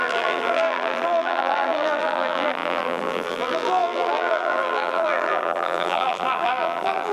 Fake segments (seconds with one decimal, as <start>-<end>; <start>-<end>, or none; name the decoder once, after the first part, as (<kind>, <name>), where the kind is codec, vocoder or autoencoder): 0.0-7.1 (vocoder, BigVGAN v2)